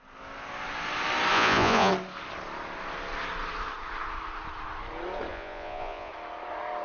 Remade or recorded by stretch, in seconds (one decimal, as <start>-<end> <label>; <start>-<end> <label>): 0.0-1.3 recorded; 1.3-1.9 remade; 1.9-5.3 recorded; 5.3-6.1 remade; 6.1-6.8 recorded